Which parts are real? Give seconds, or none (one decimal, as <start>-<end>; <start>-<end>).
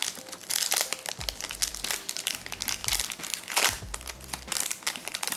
0.0-2.8; 3.8-5.4